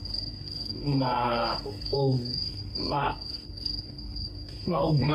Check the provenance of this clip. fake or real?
fake